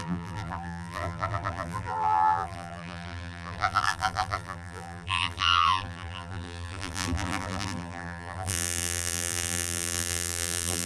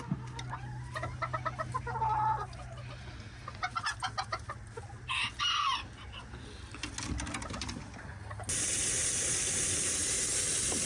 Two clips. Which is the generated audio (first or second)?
first